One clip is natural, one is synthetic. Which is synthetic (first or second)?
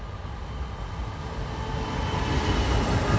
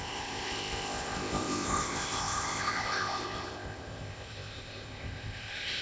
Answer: second